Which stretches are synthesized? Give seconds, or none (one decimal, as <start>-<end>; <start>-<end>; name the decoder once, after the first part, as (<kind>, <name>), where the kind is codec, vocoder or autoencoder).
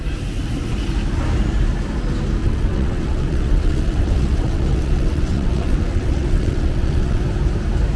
2.4-7.2 (vocoder, WaveNeXt)